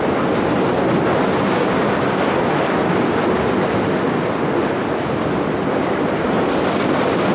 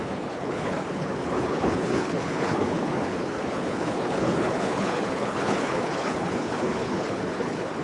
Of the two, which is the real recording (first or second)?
first